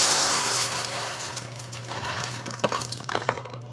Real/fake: fake